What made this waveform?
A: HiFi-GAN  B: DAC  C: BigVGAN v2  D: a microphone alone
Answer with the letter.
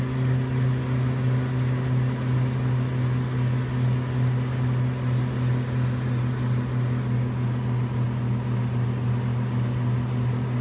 D